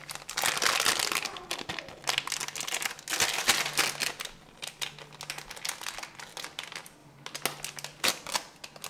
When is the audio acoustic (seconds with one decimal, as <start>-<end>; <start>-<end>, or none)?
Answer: 0.0-8.9